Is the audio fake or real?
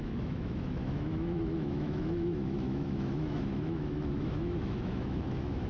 fake